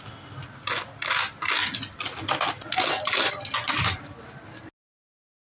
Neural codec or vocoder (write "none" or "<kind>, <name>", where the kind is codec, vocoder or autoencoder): none